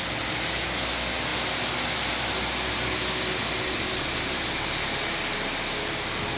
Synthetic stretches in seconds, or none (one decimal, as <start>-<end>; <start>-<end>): none